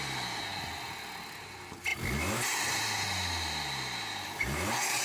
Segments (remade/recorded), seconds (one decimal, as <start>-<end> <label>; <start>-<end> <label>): 0.0-5.0 recorded